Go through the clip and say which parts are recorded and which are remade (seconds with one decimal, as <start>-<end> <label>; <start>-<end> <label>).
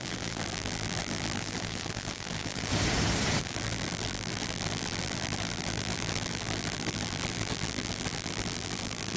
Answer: 0.0-2.7 remade; 2.7-3.4 recorded; 3.4-9.2 remade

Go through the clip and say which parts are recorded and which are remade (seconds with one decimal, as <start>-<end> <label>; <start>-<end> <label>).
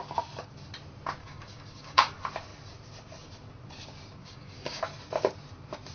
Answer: 0.0-1.2 recorded; 1.2-2.1 remade; 2.1-4.2 recorded; 4.2-4.8 remade; 4.8-5.9 recorded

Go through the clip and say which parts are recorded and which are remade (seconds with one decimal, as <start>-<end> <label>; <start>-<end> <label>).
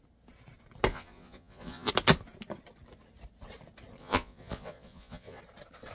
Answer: 0.0-0.9 recorded; 0.9-1.9 remade; 1.9-4.0 recorded; 4.0-5.4 remade; 5.4-5.9 recorded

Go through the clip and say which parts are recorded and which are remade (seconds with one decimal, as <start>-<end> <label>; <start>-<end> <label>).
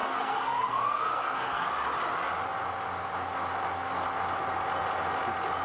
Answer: 0.0-1.7 remade; 1.7-5.6 recorded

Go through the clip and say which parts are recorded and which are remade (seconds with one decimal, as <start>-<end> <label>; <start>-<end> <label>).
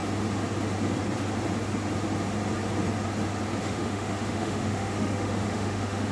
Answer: 0.0-3.6 recorded; 3.6-6.1 remade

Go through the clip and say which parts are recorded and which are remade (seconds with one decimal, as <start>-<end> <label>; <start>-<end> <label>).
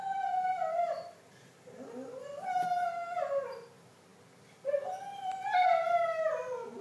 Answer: 0.0-6.8 recorded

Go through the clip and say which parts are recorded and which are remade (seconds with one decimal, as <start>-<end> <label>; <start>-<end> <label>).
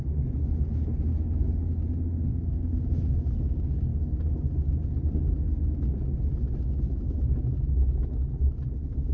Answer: 0.0-2.3 recorded; 2.3-2.8 remade; 2.8-9.1 recorded